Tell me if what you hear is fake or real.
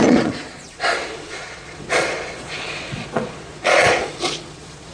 fake